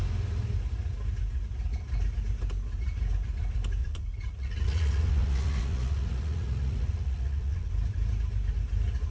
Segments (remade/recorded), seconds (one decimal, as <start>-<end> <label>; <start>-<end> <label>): 0.0-3.8 recorded; 3.8-7.7 remade; 7.7-9.1 recorded